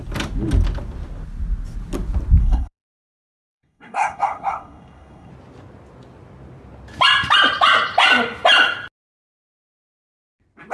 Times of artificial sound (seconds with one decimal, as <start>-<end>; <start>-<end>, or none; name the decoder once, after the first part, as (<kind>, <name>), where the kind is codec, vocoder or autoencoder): 2.4-5.3 (codec, SNAC)

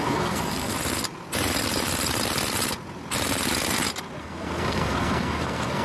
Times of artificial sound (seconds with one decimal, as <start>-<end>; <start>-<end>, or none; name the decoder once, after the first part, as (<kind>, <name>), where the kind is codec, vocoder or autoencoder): 0.0-0.7 (codec, SNAC); 4.2-5.8

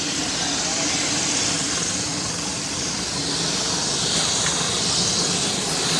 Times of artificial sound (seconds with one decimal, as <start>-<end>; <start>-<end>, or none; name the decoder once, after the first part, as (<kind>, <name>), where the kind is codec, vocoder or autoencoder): none

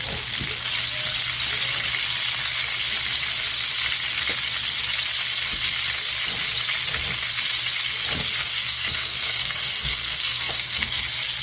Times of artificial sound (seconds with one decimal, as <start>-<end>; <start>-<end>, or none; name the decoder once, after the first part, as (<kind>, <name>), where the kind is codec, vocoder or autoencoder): 8.4-11.0 (codec, SNAC)

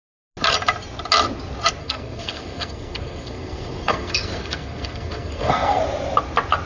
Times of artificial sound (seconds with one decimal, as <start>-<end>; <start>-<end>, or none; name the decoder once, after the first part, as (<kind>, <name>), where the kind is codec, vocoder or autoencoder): 1.8-5.8 (codec, SNAC)

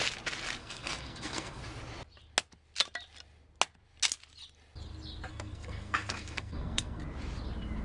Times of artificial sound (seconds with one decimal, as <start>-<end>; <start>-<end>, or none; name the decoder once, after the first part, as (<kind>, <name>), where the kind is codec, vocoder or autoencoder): 0.6-1.6 (codec, SNAC); 5.3-7.0

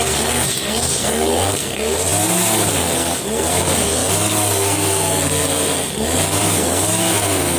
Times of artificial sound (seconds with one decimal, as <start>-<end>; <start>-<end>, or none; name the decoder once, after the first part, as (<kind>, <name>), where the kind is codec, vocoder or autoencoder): 0.0-7.6 (codec, SNAC)

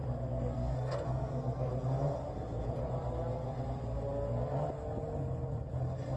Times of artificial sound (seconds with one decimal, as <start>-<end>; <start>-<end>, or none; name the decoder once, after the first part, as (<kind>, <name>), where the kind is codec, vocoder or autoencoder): 0.0-1.7 (codec, SNAC)